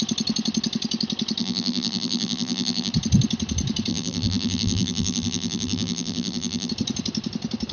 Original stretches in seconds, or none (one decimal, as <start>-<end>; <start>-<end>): 0.0-1.4; 2.9-3.9; 6.7-7.7

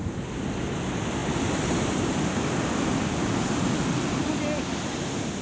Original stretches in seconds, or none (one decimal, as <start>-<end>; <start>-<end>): 0.0-5.4